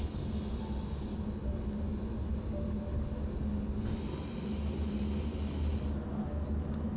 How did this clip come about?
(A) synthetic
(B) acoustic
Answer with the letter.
B